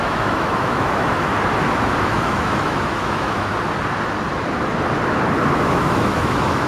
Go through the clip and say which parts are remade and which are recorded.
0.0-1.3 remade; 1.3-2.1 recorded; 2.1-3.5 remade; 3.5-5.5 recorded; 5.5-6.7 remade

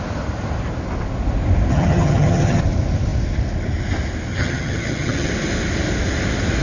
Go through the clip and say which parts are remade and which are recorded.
0.0-1.7 recorded; 1.7-2.6 remade; 2.6-4.3 recorded; 4.3-5.3 remade; 5.3-6.6 recorded

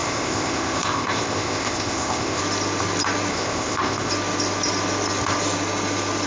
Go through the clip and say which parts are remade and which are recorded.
0.0-2.4 remade; 2.4-3.3 recorded; 3.3-4.1 remade; 4.1-6.3 recorded

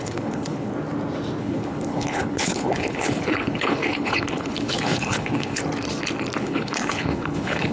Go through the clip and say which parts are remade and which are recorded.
0.0-0.7 remade; 0.7-1.4 recorded; 1.4-5.6 remade; 5.6-6.4 recorded; 6.4-7.7 remade